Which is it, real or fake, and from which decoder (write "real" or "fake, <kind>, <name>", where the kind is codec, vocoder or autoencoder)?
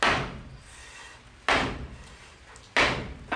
real